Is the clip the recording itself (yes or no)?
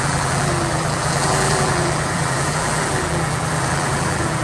no